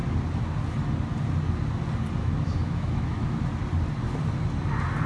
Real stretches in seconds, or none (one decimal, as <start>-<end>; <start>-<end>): 0.0-2.2; 3.4-5.1